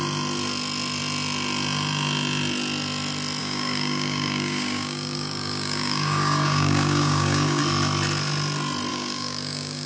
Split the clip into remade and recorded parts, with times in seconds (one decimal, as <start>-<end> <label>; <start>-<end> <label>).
0.0-3.4 recorded; 3.4-7.6 remade; 7.6-8.9 recorded; 8.9-9.9 remade